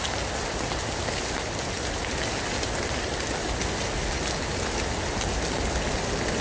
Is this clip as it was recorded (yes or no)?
yes